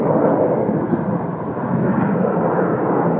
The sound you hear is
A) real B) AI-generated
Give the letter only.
A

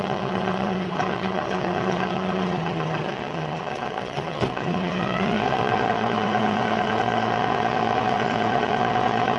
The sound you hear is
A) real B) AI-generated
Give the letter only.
B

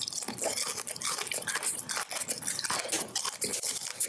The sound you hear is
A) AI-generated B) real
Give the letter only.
B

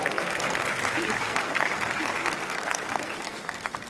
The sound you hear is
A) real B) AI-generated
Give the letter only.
B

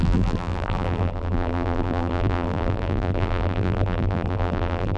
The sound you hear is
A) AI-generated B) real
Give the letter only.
A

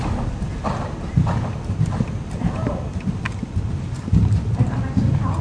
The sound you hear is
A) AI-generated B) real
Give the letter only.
B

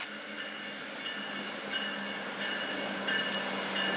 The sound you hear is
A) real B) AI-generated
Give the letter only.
A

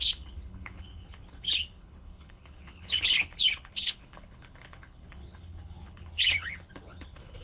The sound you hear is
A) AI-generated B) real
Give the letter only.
A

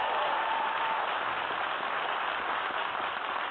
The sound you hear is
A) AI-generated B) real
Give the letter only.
B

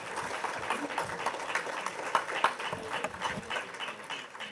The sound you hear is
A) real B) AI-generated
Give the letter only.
A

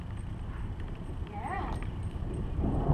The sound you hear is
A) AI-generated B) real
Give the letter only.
A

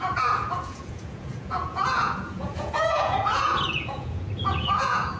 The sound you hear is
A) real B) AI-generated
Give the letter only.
B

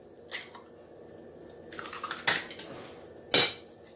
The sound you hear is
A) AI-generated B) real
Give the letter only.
B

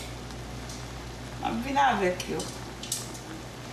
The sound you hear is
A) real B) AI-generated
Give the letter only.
A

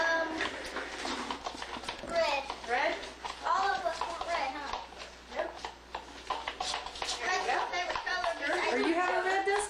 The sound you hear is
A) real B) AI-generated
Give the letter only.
A